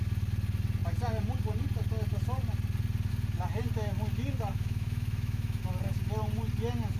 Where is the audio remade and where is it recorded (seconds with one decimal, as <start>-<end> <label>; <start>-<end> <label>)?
0.0-4.5 recorded; 4.5-5.6 remade; 5.6-7.0 recorded